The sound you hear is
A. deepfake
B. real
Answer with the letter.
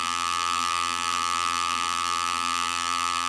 A